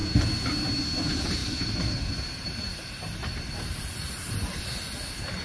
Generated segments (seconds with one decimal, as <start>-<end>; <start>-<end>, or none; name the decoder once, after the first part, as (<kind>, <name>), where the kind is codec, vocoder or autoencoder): 1.4-4.6 (vocoder, BigVGAN v2)

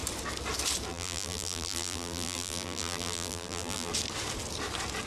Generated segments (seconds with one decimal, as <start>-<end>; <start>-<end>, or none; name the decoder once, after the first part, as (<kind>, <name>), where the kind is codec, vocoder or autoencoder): 0.9-3.9 (vocoder, BigVGAN v2)

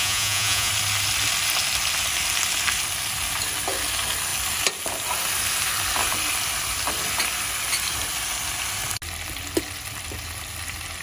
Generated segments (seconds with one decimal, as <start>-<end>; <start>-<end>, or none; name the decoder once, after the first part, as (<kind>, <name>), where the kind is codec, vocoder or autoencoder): 0.0-0.7 (vocoder, Vocos)

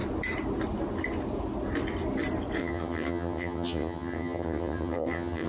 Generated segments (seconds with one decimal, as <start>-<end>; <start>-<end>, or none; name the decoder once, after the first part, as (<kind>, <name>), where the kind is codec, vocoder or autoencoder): 2.6-5.5 (vocoder, HiFi-GAN)

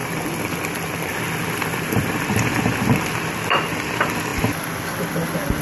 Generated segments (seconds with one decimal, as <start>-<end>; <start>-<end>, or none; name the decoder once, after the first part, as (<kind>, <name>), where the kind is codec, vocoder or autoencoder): 0.0-3.0 (vocoder, BigVGAN v2)

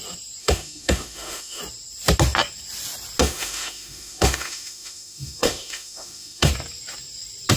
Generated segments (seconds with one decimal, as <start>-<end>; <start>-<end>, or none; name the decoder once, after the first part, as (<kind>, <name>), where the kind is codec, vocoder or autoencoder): 0.4-1.6 (autoencoder, DAC-VAE); 3.2-6.5

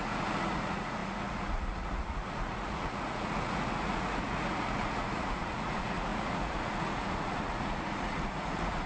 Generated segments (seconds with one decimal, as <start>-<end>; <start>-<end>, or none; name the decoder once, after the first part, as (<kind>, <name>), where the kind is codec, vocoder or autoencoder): 0.0-8.9 (vocoder, Vocos)

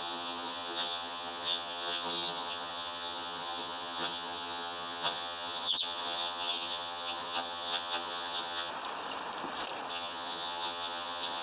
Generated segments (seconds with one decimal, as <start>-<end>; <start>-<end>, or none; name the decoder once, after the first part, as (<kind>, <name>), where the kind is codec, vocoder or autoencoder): 0.0-8.7 (vocoder, HiFi-GAN); 9.9-11.4